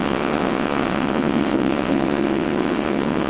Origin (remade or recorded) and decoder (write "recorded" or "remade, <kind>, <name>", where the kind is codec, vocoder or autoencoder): remade, vocoder, WaveNeXt